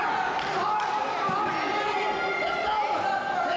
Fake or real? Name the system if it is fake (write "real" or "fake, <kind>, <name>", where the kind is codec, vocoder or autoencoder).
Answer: fake, vocoder, BigVGAN v2